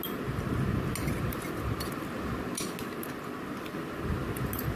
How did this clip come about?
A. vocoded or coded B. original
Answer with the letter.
B